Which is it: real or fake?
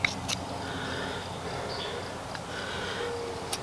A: real